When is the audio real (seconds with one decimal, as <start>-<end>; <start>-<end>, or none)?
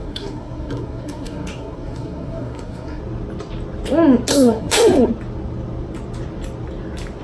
3.0-4.3; 5.1-7.2